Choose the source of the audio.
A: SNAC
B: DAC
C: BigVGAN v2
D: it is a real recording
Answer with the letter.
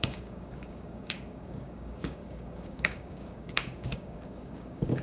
B